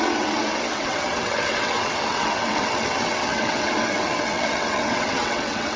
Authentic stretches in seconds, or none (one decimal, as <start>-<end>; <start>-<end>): none